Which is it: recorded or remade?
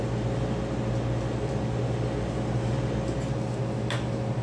recorded